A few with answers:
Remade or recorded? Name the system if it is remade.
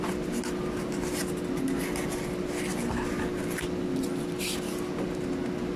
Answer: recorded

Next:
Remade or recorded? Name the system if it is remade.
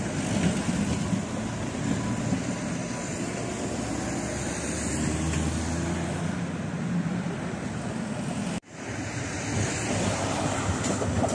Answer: recorded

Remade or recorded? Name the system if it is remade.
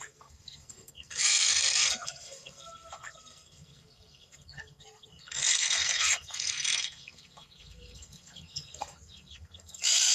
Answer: remade, codec, SNAC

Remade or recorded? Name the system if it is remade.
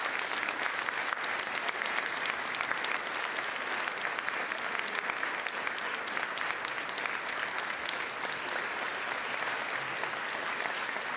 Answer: recorded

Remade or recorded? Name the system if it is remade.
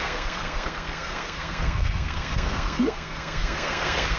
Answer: remade, codec, SNAC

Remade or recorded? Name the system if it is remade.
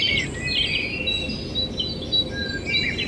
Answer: recorded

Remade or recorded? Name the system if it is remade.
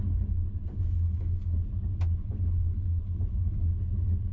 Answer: recorded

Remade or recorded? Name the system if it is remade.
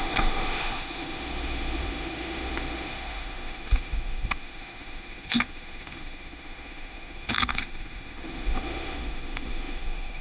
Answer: remade, autoencoder, DAC-VAE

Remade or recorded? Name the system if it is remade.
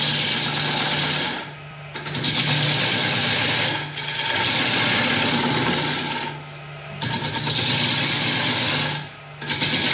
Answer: recorded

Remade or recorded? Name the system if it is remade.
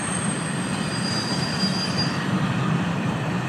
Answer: remade, vocoder, BigVGAN v2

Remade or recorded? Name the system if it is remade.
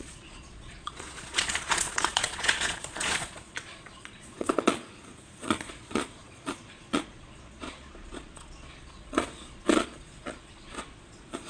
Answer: remade, vocoder, Vocos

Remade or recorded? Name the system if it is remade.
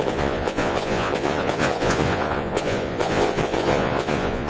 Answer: remade, vocoder, Vocos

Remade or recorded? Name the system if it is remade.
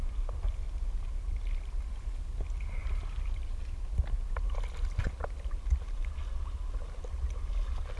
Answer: recorded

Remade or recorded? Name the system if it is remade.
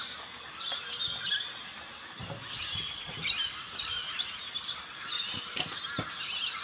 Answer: recorded